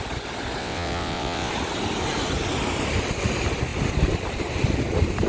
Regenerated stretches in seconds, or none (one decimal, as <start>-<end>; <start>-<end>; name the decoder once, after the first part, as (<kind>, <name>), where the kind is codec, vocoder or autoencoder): 0.6-1.5 (vocoder, WaveNeXt)